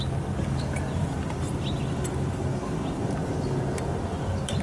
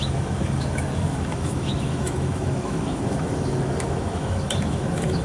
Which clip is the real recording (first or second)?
first